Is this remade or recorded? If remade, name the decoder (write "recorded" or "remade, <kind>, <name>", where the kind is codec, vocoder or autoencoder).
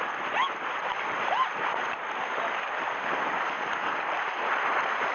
recorded